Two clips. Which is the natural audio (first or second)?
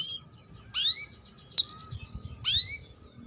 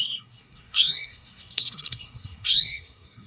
first